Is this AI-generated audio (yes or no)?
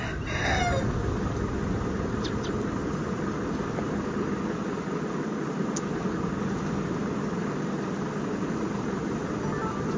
no